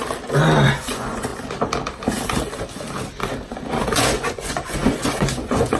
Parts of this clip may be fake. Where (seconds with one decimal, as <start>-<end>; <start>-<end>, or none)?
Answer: 0.7-1.3; 3.7-5.8